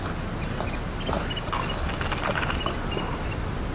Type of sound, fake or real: real